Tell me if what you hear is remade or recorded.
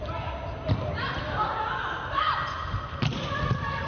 recorded